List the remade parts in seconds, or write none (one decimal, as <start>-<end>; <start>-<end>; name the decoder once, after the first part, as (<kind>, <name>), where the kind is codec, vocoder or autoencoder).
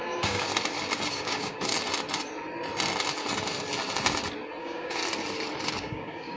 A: 0.0-0.5 (codec, DAC); 1.1-1.7; 4.6-5.0; 5.7-6.4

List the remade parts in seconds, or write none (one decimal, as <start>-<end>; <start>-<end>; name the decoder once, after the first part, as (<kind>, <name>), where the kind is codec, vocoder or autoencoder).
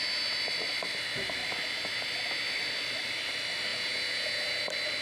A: 3.7-4.6 (vocoder, Vocos)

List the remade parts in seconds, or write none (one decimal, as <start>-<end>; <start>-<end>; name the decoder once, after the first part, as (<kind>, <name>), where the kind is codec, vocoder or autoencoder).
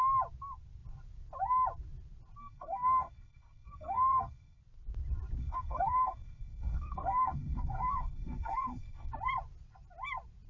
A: 2.4-4.6 (codec, SNAC); 5.4-9.1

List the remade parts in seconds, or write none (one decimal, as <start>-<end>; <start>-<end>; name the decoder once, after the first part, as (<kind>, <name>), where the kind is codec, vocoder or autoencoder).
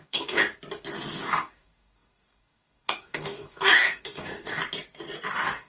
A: 0.0-0.4 (codec, DAC); 1.2-4.6; 5.3-5.7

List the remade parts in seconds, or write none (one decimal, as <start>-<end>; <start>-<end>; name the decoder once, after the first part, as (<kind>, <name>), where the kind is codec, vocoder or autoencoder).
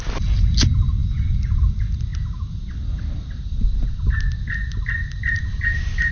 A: none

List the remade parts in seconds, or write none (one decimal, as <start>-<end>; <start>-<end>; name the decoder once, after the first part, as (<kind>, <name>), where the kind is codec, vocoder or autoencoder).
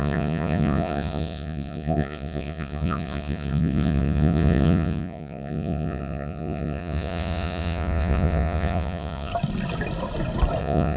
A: 0.0-9.3 (vocoder, Vocos); 10.6-11.0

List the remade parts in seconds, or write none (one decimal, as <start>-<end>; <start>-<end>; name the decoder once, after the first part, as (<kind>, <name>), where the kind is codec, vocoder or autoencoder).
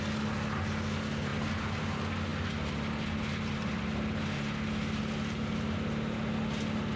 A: none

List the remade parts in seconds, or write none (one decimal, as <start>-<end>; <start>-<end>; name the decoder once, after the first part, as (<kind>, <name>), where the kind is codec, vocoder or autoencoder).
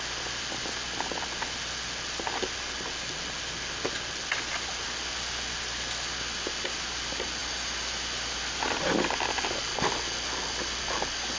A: none